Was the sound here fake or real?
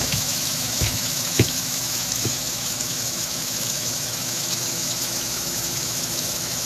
fake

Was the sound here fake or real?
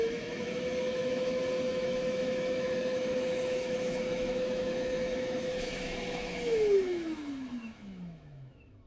fake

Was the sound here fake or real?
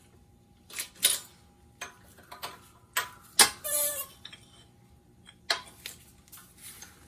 real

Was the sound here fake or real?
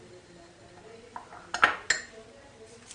real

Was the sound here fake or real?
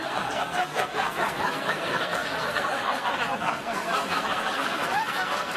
fake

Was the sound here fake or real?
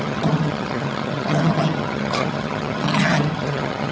fake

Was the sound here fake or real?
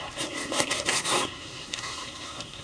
fake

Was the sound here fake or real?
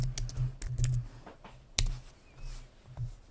real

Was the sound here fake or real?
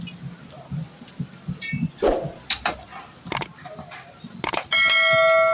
real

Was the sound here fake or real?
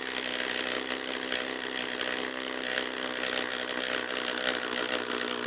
real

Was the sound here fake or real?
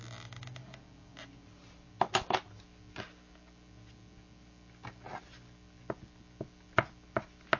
real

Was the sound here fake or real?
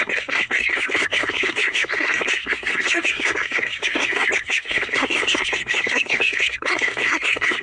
fake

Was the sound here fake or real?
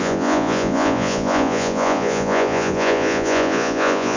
fake